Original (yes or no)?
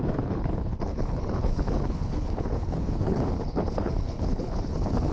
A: no